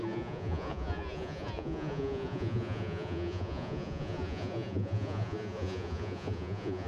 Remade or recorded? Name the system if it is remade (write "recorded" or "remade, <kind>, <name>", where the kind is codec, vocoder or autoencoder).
remade, vocoder, Vocos